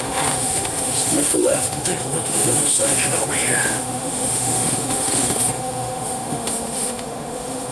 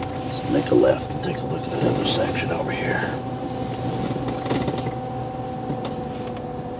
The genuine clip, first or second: second